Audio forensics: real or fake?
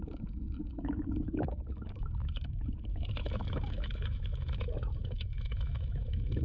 fake